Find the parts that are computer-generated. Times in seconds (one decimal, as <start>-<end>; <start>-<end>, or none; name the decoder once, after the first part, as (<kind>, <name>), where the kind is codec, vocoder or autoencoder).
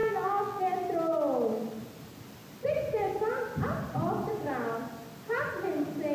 0.0-0.6 (vocoder, BigVGAN v2)